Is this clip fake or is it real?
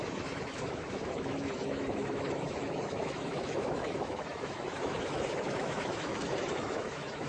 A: fake